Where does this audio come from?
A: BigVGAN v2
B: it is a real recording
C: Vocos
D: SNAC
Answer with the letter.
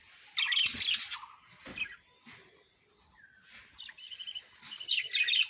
B